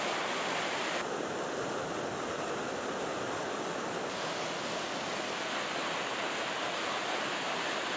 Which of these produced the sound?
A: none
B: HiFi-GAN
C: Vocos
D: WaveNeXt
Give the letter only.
A